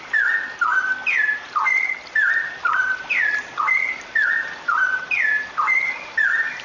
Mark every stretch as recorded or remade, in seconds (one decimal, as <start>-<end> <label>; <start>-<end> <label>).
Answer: 0.0-1.7 recorded; 1.7-3.5 remade; 3.5-6.6 recorded